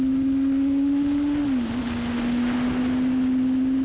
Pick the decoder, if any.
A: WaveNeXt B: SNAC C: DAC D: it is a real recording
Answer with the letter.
D